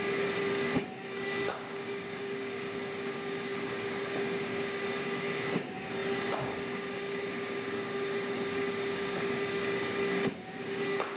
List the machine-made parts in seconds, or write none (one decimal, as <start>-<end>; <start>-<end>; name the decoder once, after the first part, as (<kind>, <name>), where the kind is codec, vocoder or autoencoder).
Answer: 0.0-11.2 (codec, DAC)